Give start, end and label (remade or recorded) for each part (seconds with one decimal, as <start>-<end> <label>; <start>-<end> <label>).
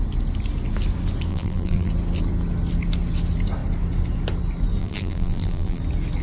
0.0-1.3 recorded; 1.3-1.9 remade; 1.9-4.8 recorded; 4.8-5.8 remade; 5.8-6.2 recorded